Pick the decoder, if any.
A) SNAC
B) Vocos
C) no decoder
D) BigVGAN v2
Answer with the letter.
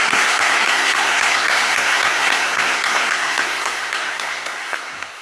A